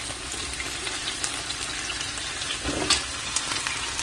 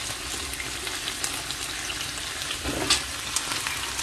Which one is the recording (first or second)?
second